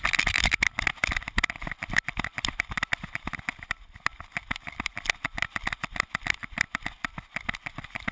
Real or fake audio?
real